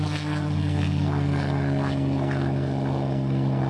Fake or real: fake